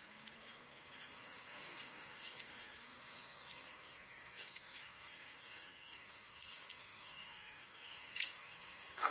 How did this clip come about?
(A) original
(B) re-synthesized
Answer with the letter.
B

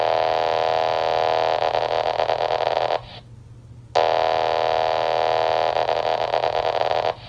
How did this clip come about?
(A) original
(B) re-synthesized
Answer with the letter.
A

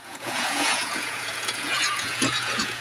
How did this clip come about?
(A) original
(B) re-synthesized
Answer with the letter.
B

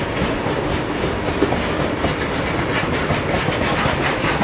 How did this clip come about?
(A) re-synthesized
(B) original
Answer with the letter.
B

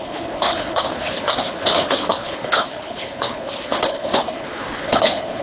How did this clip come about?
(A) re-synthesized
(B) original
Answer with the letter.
A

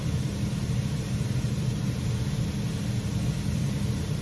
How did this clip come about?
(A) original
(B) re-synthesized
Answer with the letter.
A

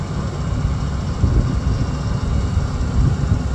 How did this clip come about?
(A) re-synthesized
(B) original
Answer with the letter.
B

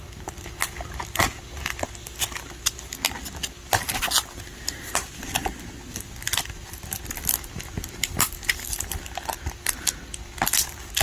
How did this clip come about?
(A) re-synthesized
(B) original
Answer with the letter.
B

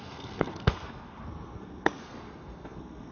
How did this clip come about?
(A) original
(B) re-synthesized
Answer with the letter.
B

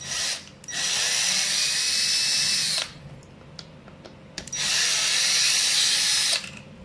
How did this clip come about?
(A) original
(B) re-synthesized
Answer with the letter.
A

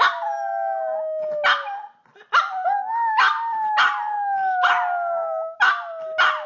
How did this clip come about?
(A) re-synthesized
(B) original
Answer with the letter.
B